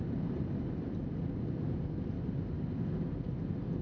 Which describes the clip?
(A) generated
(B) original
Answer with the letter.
B